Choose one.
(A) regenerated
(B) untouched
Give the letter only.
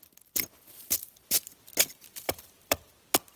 A